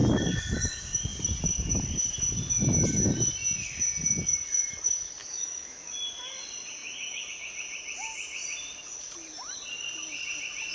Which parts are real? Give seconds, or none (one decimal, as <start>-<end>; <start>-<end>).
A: 0.0-5.2; 5.9-6.8; 7.3-10.7